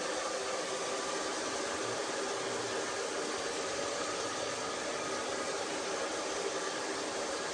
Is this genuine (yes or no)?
yes